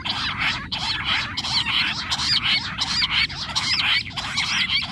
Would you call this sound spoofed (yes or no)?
no